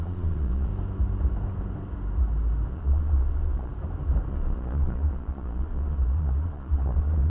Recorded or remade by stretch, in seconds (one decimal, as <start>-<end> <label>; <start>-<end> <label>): 0.0-0.7 remade; 0.7-2.7 recorded; 2.7-3.7 remade; 3.7-4.3 recorded; 4.3-7.3 remade